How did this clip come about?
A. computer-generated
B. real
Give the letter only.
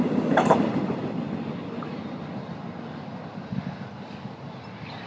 B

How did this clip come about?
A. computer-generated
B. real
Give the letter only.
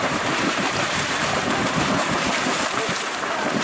A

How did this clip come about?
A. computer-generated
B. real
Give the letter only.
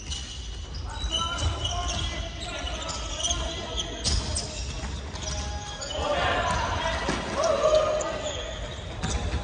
B